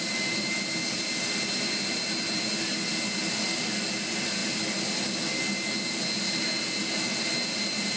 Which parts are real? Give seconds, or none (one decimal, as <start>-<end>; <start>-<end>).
0.0-8.0